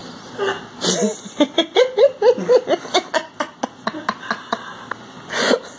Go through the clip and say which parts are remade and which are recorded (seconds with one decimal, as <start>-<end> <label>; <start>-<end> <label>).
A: 0.0-1.4 recorded; 1.4-2.1 remade; 2.1-5.0 recorded; 5.0-5.8 remade